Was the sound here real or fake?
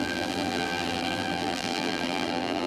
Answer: fake